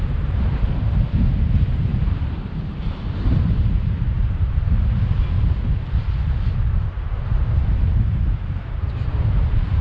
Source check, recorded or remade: remade